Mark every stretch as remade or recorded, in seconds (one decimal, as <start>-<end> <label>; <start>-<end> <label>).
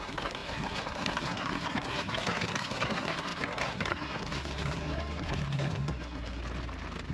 0.0-6.4 remade; 6.4-7.1 recorded